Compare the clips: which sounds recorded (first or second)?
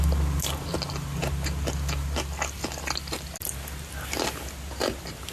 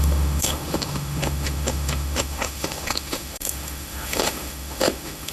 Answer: first